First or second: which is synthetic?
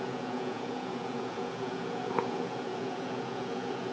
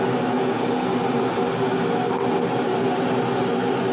first